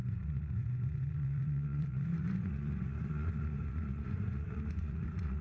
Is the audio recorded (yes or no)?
no